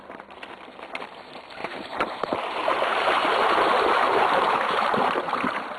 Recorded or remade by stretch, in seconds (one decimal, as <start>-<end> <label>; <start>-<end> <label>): 0.0-1.6 recorded; 1.6-5.1 remade; 5.1-5.8 recorded